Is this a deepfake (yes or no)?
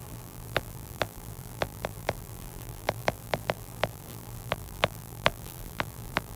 yes